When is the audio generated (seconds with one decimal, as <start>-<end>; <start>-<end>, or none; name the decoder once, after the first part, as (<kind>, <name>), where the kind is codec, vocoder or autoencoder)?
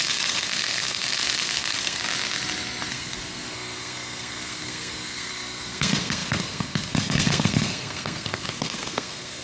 0.0-2.0 (codec, SNAC); 2.9-9.4